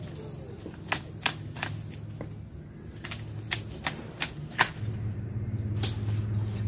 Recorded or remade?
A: recorded